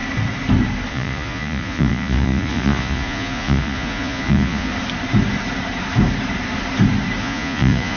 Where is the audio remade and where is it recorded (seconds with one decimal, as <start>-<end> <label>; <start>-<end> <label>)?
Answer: 0.0-0.9 recorded; 0.9-4.7 remade; 4.7-7.2 recorded; 7.2-8.0 remade